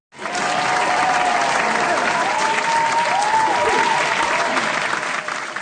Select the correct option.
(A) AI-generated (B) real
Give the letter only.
B